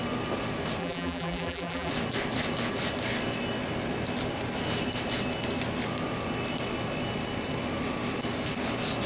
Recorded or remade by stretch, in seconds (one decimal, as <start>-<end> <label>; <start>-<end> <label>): 0.0-0.8 recorded; 0.8-1.9 remade; 1.9-9.1 recorded